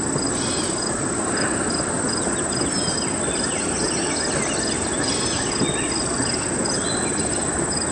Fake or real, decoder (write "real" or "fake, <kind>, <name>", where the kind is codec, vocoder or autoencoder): real